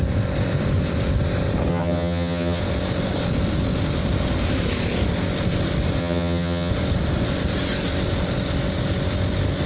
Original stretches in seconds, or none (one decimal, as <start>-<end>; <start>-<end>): 0.0-1.7; 2.6-6.0; 6.7-9.7